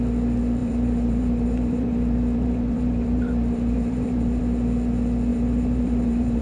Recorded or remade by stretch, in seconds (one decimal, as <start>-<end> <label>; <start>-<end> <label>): 0.0-0.6 recorded; 0.6-4.4 remade; 4.4-5.3 recorded; 5.3-6.4 remade